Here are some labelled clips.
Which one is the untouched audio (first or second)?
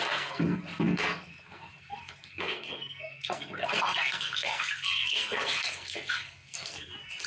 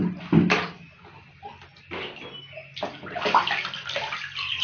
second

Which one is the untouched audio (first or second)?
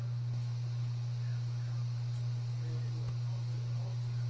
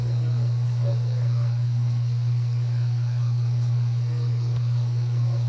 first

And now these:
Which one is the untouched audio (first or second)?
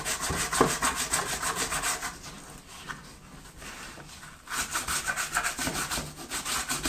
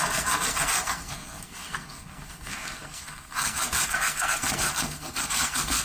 first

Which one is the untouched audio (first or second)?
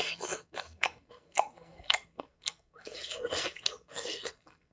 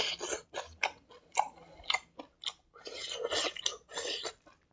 second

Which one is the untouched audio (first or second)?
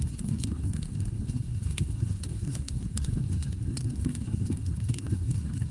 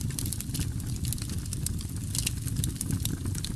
second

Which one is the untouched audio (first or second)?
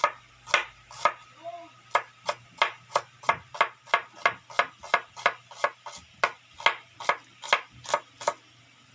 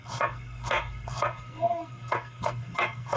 first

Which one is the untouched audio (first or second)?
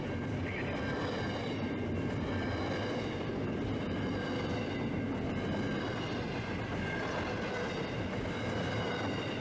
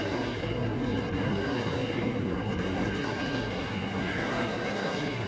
first